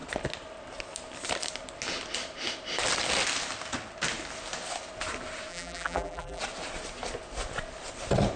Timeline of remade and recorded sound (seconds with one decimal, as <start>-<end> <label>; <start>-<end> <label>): 0.0-5.5 recorded; 5.5-6.4 remade; 6.4-8.4 recorded